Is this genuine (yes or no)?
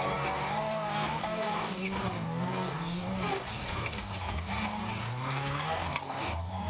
no